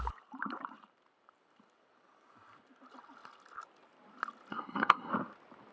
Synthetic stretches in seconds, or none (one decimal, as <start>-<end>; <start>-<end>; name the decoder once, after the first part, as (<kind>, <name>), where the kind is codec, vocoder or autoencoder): 4.5-5.1 (codec, SNAC)